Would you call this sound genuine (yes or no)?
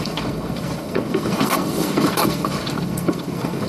no